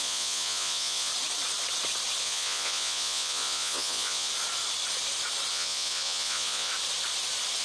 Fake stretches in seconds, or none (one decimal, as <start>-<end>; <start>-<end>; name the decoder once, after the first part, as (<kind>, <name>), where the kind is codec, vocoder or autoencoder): 0.0-1.1 (vocoder, Vocos); 2.2-4.3; 5.5-6.7